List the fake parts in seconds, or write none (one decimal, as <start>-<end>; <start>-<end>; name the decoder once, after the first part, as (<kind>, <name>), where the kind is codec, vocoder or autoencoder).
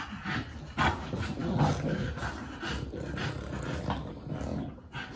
none